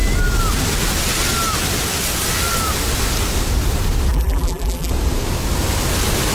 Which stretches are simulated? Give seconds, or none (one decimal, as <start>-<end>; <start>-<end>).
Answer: 4.1-4.9

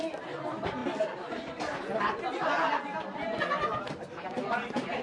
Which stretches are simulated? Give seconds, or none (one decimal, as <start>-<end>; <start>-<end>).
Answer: none

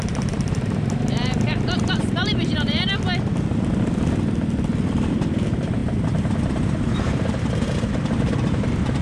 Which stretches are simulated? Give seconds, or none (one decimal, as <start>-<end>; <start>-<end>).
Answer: 0.0-2.9; 4.9-9.0

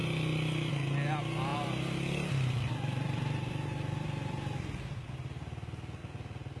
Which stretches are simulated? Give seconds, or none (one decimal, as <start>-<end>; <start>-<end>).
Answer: 0.0-0.7; 1.5-5.1

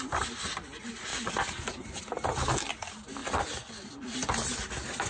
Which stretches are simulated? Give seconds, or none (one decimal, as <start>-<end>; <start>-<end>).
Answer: 1.1-2.0; 3.2-3.7

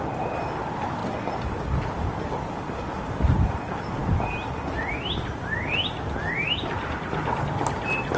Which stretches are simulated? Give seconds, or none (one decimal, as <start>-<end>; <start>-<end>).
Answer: 0.0-8.2